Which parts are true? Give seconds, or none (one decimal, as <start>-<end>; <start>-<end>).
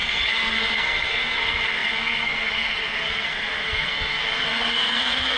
none